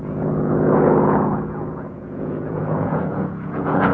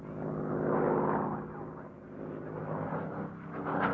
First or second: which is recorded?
second